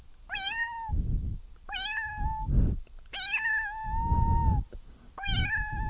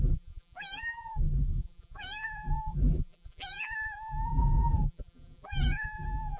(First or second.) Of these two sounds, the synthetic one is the second